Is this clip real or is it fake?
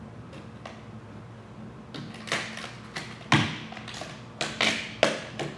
real